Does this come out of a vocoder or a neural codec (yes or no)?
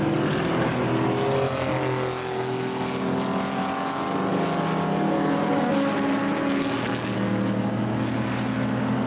no